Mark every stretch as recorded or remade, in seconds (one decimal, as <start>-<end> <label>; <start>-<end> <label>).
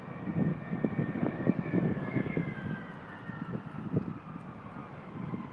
0.0-0.5 recorded; 0.5-2.4 remade; 2.4-4.8 recorded; 4.8-5.5 remade